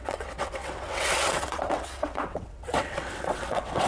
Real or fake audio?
fake